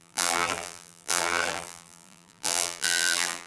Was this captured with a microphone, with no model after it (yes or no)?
no